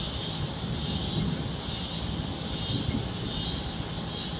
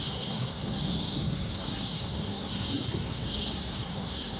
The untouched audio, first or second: first